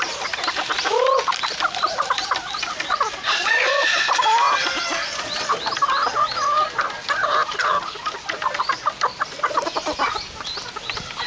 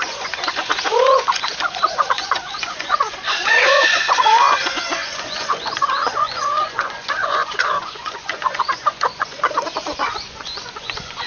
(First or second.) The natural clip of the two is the first